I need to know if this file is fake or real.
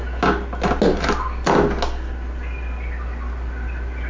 real